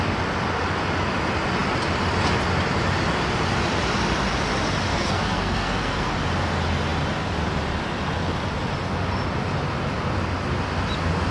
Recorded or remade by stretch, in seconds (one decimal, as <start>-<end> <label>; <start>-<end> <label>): 0.0-4.9 recorded; 4.9-6.1 remade; 6.1-11.3 recorded